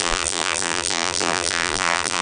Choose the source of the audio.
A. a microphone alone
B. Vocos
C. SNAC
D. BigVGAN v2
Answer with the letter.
D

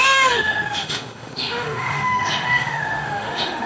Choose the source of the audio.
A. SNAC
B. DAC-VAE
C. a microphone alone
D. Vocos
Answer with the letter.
B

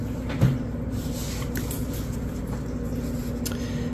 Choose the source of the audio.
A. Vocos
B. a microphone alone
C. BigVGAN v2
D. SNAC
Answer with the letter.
B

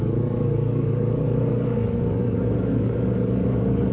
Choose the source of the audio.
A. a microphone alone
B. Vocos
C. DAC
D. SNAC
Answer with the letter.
C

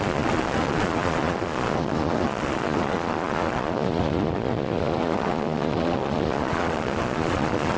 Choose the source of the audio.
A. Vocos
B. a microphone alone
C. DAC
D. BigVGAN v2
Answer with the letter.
A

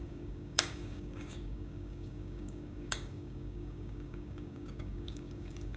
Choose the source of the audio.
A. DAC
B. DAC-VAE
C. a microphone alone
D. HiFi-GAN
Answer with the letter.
A